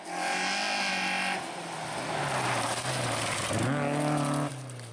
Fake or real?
real